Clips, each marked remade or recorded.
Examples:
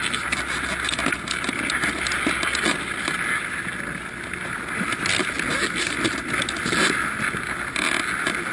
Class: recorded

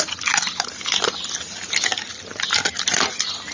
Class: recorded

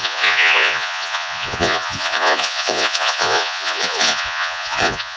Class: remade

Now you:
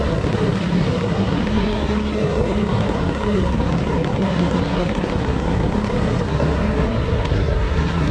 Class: remade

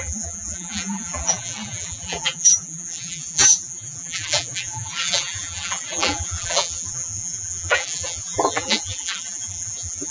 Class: remade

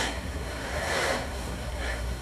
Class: remade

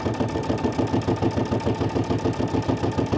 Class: recorded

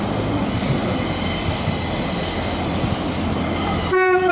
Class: recorded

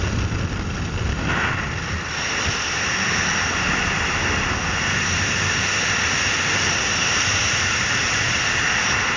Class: recorded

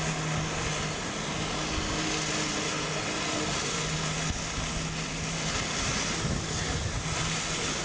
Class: recorded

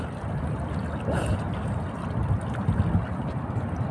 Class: recorded